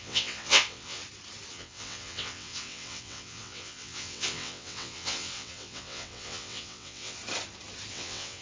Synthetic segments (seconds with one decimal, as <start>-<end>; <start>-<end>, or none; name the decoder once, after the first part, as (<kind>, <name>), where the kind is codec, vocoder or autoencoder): 0.0-1.0 (vocoder, WaveNeXt); 1.5-7.2; 7.9-8.4